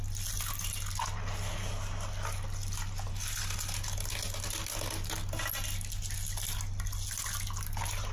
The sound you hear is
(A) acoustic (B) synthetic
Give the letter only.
A